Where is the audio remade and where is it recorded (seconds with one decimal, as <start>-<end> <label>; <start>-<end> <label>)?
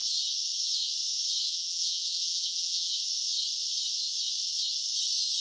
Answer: 0.0-1.5 recorded; 1.5-2.9 remade; 2.9-5.4 recorded